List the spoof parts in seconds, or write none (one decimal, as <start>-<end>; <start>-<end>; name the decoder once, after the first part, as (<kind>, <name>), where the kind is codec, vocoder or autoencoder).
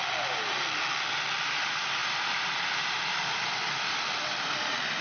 1.4-5.0 (vocoder, BigVGAN v2)